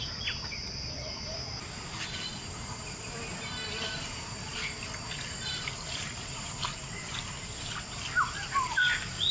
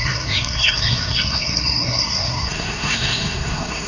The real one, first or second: first